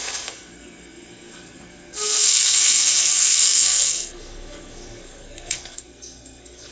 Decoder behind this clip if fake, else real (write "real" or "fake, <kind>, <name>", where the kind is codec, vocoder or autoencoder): fake, codec, SNAC